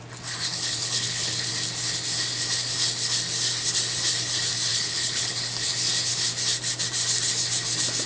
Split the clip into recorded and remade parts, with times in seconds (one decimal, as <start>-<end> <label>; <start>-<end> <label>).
0.0-0.5 recorded; 0.5-1.5 remade; 1.5-4.7 recorded; 4.7-5.3 remade; 5.3-8.1 recorded